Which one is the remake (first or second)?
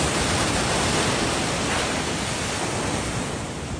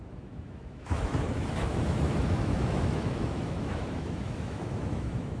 second